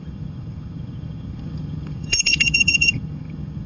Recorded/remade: remade